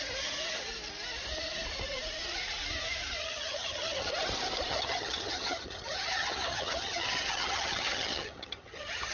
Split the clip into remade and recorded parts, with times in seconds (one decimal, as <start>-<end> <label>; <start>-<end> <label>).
0.0-3.2 recorded; 3.2-4.1 remade; 4.1-4.7 recorded; 4.7-9.1 remade